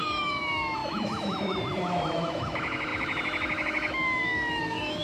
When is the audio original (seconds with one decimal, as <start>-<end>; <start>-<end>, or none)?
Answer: none

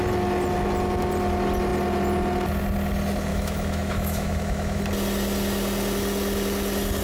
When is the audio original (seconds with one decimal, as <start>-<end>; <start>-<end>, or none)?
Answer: 0.0-3.3; 4.8-7.0